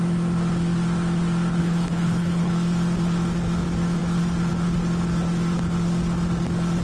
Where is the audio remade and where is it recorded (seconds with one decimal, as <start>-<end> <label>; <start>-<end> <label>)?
0.0-1.6 recorded; 1.6-2.5 remade; 2.5-6.8 recorded